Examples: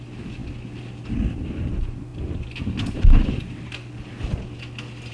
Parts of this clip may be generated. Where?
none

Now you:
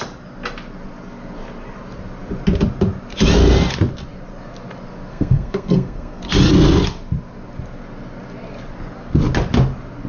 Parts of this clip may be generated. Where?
5.1-6.2